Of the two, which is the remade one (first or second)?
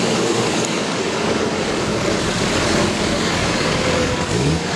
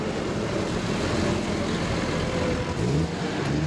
first